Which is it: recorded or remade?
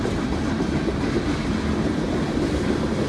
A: recorded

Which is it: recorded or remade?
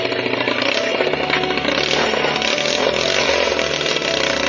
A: recorded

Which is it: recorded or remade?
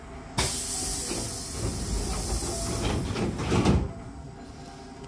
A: recorded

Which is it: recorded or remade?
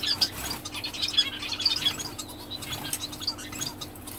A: recorded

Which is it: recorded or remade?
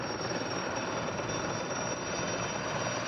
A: remade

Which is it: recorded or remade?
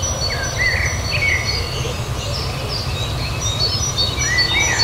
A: recorded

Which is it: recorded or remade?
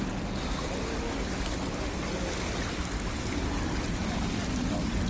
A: recorded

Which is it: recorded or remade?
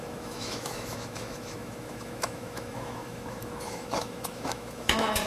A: remade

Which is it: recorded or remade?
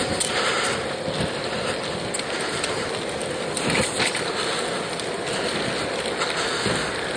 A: recorded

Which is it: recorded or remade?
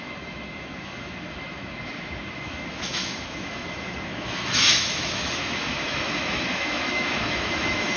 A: remade